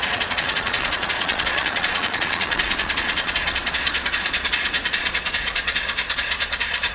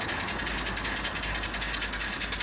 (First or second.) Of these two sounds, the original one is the second